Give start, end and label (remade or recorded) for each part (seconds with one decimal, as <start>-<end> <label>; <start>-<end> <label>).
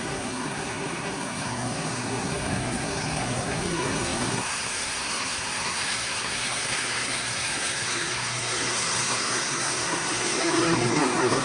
0.0-11.4 remade